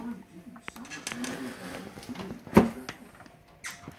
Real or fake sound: real